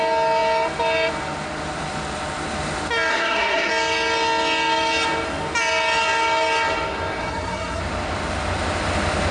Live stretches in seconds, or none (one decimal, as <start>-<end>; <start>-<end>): 0.0-3.1; 3.7-7.2; 7.8-9.3